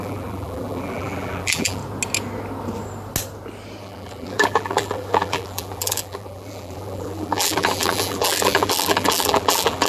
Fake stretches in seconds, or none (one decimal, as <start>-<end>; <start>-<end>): 0.0-1.8; 3.8-9.9